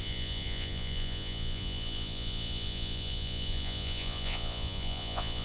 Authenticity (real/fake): fake